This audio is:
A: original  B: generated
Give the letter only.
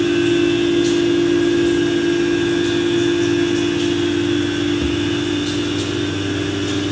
A